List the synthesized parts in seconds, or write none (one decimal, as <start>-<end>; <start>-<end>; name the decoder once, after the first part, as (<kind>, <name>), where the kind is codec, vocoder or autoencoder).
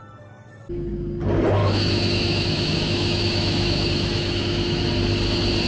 1.6-4.8 (autoencoder, DAC-VAE)